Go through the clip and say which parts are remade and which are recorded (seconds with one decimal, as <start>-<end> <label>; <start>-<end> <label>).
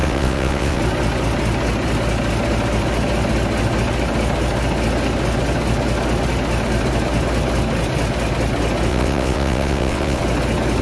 0.0-0.8 remade; 0.8-8.9 recorded; 8.9-10.2 remade; 10.2-10.8 recorded